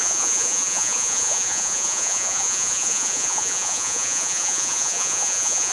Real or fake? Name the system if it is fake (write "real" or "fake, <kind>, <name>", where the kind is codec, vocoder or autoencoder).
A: fake, vocoder, Vocos